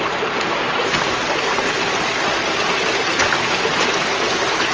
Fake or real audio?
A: real